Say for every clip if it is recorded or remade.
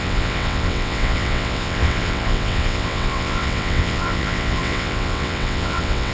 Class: remade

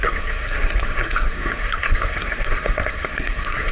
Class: remade